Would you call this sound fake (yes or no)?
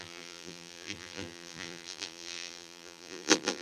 yes